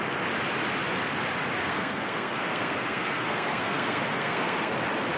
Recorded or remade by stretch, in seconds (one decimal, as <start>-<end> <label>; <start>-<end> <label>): 0.0-1.6 recorded; 1.6-4.7 remade; 4.7-5.2 recorded